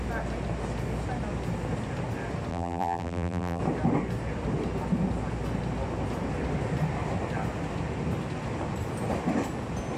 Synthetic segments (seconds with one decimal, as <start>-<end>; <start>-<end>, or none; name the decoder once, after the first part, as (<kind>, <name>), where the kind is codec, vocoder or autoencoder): 2.5-3.6 (vocoder, BigVGAN v2)